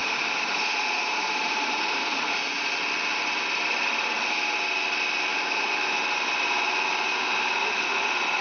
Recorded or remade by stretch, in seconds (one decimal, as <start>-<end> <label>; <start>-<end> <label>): 0.0-2.6 remade; 2.6-5.3 recorded; 5.3-5.8 remade; 5.8-8.4 recorded

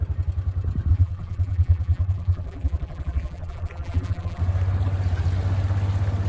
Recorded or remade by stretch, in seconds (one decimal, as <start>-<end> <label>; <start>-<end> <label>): 0.0-0.9 recorded; 0.9-4.4 remade; 4.4-6.3 recorded

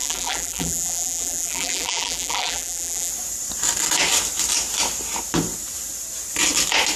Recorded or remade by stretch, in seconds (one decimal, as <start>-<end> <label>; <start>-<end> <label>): 0.0-3.1 remade; 3.1-7.0 recorded

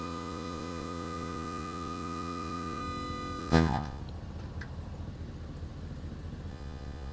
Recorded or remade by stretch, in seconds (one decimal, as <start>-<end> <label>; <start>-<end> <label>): 0.0-2.8 remade; 2.8-3.4 recorded; 3.4-4.0 remade; 4.0-6.5 recorded; 6.5-7.1 remade

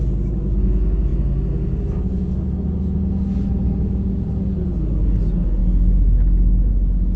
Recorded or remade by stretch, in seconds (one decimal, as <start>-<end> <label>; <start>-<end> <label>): 0.0-7.2 recorded